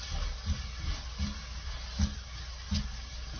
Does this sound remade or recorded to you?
recorded